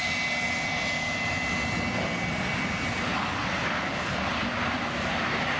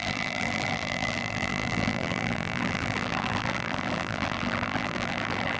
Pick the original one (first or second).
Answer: first